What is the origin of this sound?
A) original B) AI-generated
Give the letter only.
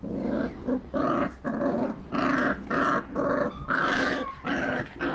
A